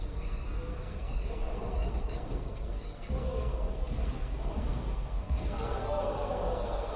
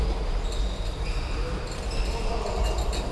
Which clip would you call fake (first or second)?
first